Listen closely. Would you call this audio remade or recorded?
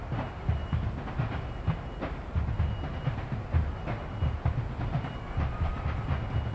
recorded